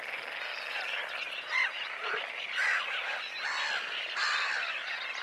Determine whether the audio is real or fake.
real